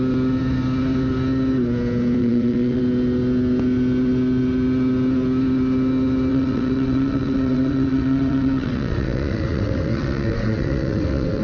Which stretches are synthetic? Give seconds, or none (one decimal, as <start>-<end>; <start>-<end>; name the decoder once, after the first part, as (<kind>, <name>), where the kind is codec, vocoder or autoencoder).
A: 2.2-2.8 (vocoder, WaveNeXt); 6.3-11.4